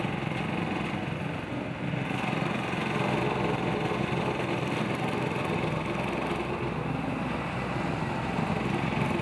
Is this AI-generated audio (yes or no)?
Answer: no